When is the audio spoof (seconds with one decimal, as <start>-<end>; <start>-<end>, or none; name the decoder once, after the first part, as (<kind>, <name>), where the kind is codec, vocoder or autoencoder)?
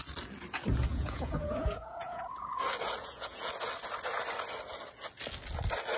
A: 0.9-2.5 (vocoder, Vocos); 3.0-3.5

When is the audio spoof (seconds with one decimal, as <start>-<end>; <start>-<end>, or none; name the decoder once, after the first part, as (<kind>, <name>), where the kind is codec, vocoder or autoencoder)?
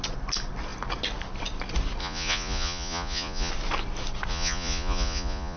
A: 2.0-3.5 (vocoder, Vocos); 4.3-5.6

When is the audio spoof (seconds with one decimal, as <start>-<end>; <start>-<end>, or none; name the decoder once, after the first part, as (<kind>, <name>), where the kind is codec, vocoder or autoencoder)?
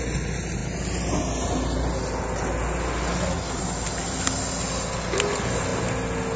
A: none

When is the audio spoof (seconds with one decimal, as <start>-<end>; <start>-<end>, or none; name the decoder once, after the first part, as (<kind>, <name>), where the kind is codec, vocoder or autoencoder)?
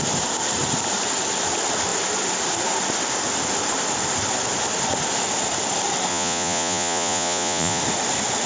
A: 6.1-7.8 (vocoder, Vocos)